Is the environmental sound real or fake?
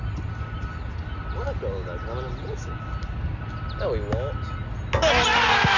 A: real